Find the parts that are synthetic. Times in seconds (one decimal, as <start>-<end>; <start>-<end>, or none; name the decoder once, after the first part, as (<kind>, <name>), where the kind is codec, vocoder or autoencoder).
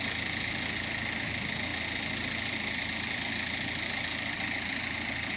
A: none